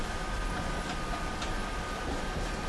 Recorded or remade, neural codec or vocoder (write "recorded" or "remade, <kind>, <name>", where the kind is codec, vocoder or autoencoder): recorded